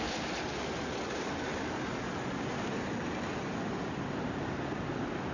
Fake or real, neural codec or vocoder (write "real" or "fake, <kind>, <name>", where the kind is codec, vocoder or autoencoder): real